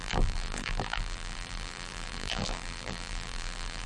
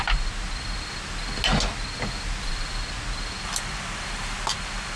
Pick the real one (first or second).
second